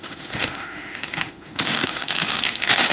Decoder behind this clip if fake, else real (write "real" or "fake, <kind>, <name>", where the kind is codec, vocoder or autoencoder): fake, autoencoder, DAC-VAE